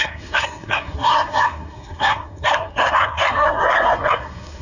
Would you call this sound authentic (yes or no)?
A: no